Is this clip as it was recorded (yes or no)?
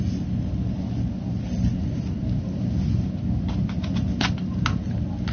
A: yes